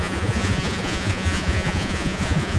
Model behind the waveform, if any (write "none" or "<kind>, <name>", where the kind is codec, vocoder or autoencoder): vocoder, Vocos